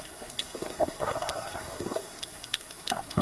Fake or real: fake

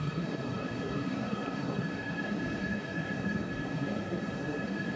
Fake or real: fake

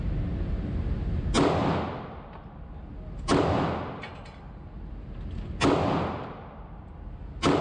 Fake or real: real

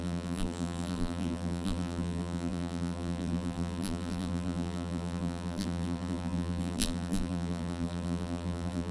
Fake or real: fake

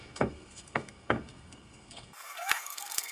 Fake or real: fake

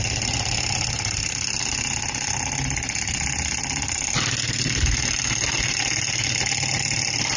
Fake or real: real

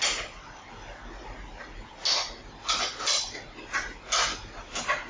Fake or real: real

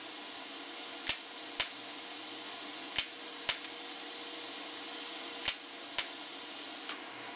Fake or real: real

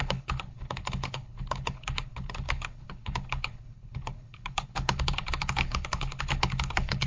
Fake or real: fake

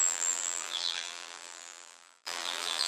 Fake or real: fake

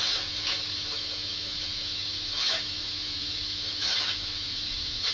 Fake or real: fake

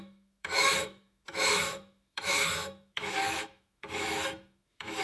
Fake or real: fake